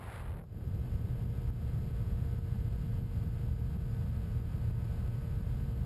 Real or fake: real